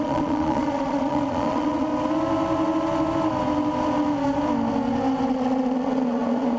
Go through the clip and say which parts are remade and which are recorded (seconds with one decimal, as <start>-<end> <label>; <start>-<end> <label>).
0.0-1.9 remade; 1.9-5.3 recorded; 5.3-6.6 remade